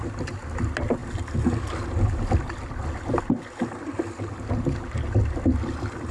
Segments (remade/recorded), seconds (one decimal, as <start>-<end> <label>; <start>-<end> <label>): 0.0-6.1 recorded